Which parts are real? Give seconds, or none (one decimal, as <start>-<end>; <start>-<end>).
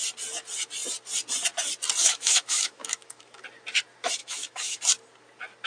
0.0-2.0; 3.4-4.2; 4.8-5.7